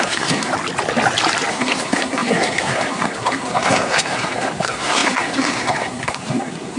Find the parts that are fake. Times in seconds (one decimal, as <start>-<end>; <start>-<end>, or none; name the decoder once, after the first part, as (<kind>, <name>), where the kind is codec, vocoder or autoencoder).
0.0-0.5 (codec, SNAC); 1.5-6.8